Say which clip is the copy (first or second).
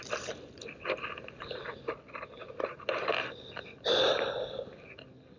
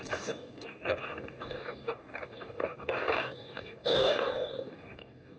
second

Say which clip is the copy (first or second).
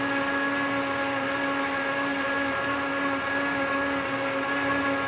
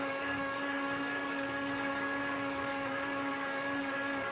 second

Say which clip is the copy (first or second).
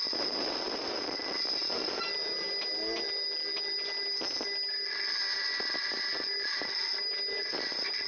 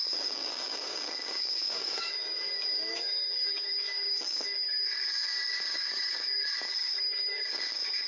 second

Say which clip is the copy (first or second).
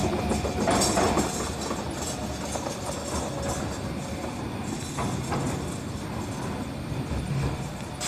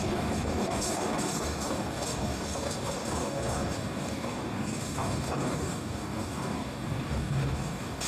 second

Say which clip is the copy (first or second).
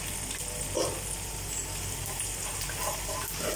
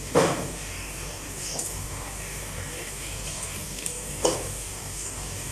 second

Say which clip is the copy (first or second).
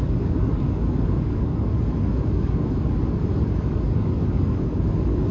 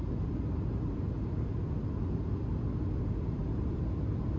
first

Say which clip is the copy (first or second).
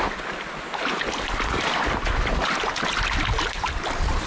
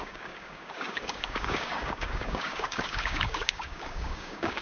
second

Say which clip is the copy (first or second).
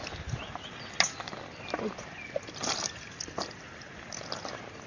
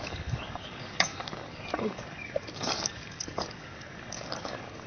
second